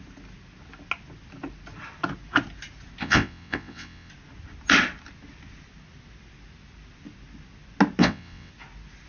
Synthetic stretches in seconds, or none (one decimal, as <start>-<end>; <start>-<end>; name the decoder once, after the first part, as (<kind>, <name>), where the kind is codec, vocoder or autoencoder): 3.0-4.1 (vocoder, WaveNeXt); 8.0-8.5